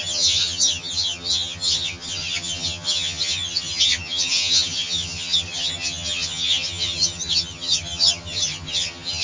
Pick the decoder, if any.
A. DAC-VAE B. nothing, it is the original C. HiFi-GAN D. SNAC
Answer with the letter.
C